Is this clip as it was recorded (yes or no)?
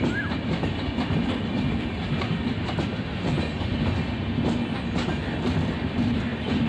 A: yes